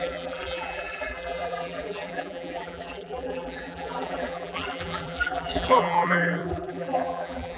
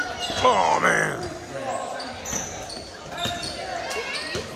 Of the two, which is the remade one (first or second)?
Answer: first